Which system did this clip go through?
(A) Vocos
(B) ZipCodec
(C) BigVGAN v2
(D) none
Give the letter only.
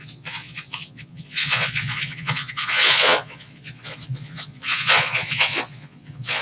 A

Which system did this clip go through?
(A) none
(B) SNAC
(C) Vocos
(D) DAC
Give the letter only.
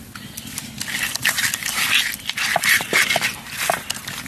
A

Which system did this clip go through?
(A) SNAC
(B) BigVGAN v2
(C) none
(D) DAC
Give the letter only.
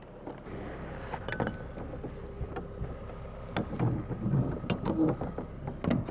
C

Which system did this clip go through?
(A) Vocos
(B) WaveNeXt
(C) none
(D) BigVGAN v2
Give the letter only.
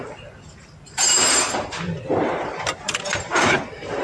D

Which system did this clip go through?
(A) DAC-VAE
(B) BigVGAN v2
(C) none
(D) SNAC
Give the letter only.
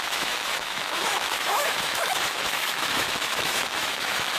A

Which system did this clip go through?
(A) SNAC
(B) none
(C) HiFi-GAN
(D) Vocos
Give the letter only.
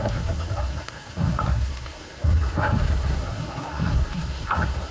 A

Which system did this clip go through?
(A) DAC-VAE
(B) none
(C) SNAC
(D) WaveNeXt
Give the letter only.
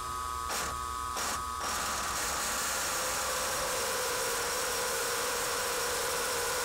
B